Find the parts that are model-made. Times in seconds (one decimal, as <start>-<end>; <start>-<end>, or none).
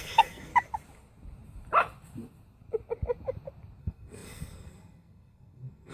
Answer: 0.0-0.5; 3.8-5.9